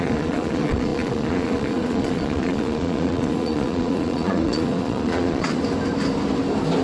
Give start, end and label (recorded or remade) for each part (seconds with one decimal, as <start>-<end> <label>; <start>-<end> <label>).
0.0-5.6 remade; 5.6-6.8 recorded